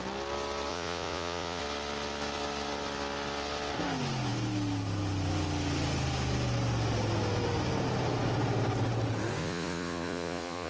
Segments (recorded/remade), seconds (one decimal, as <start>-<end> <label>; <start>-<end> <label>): 0.0-0.7 recorded; 0.7-1.6 remade; 1.6-9.4 recorded; 9.4-10.7 remade